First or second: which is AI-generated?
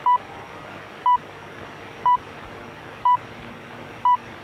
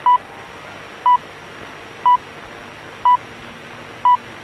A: first